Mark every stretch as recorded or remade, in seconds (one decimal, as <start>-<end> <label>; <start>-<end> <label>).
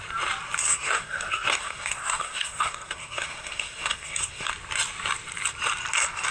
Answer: 0.0-0.7 recorded; 0.7-4.5 remade; 4.5-6.3 recorded